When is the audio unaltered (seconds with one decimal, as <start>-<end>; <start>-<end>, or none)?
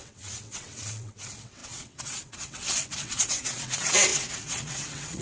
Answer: none